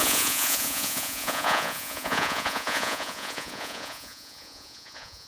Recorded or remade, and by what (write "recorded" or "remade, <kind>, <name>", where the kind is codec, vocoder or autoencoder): remade, vocoder, Vocos